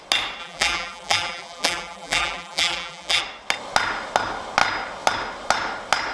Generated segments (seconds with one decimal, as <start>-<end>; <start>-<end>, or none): 0.4-3.2